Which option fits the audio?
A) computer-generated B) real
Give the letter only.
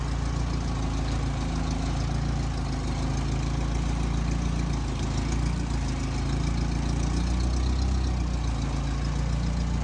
B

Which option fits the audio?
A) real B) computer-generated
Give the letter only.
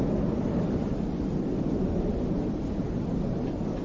A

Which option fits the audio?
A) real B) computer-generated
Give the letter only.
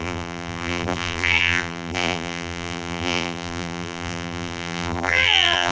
B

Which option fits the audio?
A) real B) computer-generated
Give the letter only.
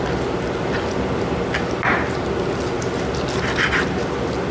A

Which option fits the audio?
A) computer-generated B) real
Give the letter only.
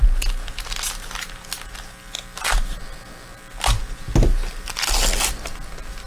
B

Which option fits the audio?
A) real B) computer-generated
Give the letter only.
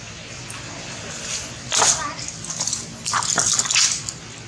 B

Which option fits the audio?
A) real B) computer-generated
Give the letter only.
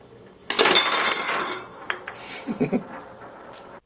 A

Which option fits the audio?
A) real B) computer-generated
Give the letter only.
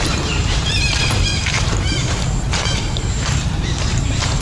B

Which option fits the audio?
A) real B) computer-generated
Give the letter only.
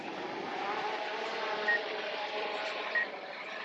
B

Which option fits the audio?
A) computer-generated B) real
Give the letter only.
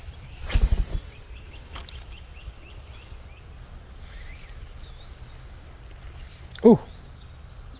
B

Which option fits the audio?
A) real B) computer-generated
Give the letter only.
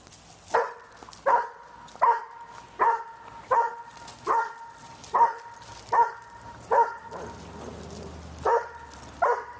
A